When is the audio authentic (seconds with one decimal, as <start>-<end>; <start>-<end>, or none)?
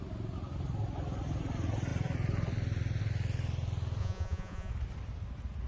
0.0-4.0; 4.7-5.7